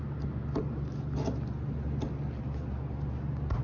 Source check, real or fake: real